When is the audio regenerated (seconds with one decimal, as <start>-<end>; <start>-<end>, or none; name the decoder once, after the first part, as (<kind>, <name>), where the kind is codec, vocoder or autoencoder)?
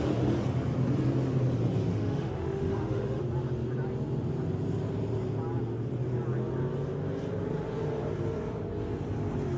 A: 1.9-3.2 (autoencoder, DAC-VAE)